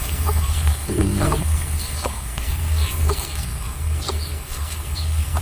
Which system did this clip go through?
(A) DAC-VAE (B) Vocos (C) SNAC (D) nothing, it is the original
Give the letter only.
C